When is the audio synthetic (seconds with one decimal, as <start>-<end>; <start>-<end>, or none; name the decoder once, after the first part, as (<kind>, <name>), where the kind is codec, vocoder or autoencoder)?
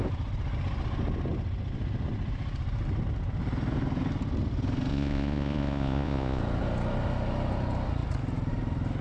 4.9-6.4 (vocoder, Vocos)